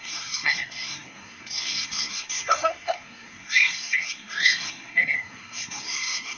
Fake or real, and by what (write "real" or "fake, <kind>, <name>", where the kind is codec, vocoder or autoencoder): fake, codec, SNAC